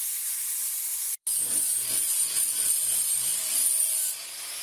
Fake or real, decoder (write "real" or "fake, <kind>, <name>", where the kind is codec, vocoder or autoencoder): fake, vocoder, BigVGAN v2